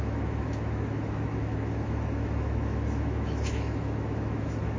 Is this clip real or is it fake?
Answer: fake